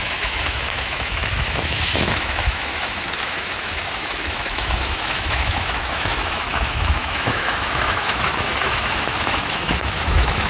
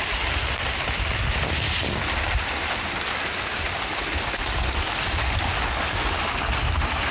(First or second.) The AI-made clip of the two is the first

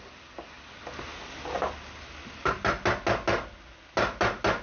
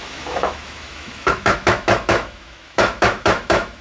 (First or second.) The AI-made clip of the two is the second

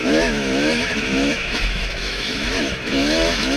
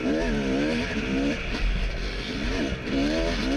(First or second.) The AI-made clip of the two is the first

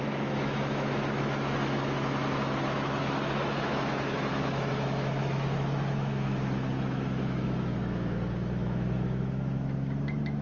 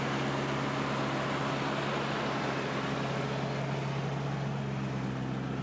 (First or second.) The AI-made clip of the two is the first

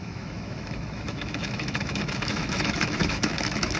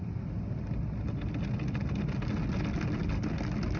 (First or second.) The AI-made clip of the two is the first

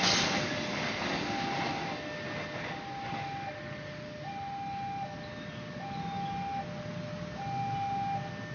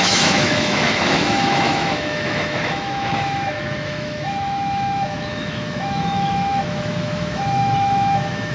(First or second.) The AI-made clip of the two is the second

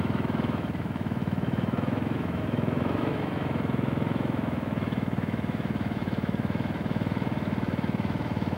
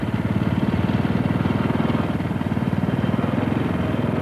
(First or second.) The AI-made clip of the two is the first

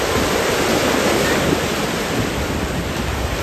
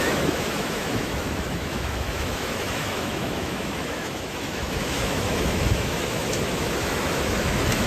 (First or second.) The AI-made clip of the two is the second